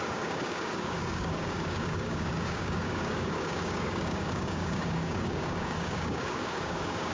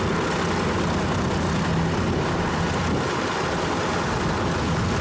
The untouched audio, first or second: second